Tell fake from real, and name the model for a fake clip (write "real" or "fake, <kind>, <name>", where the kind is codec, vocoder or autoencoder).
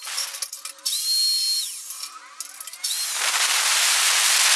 real